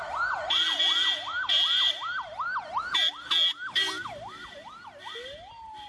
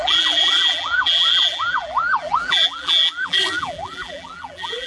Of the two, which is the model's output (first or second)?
second